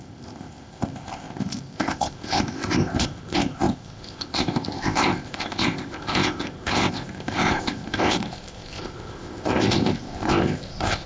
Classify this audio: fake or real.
fake